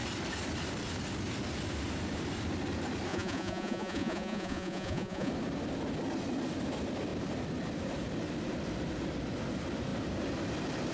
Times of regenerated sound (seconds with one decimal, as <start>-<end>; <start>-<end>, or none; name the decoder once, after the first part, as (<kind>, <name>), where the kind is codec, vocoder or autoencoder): 3.1-5.3 (vocoder, Vocos)